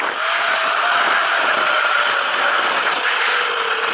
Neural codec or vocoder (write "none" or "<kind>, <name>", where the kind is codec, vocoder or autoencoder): none